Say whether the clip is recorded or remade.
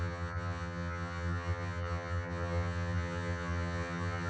remade